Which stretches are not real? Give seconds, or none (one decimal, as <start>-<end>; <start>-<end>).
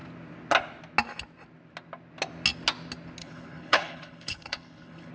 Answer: 3.2-5.1